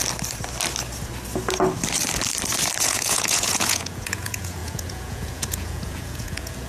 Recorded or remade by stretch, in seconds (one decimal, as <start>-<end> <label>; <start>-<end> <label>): 0.0-2.8 recorded; 2.8-6.7 remade